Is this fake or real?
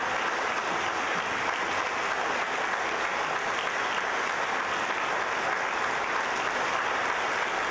real